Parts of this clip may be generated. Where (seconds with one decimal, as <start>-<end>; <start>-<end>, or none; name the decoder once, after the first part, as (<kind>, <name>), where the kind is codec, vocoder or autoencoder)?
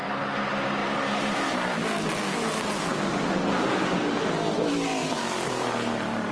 0.8-1.8 (vocoder, BigVGAN v2); 5.0-6.3